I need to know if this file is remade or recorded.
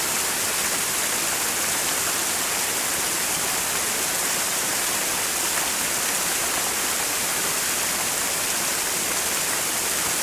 recorded